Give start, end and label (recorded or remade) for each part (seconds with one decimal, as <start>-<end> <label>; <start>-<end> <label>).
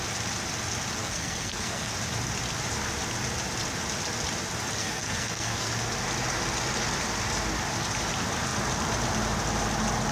0.0-1.0 recorded; 1.0-1.9 remade; 1.9-4.8 recorded; 4.8-5.7 remade; 5.7-10.1 recorded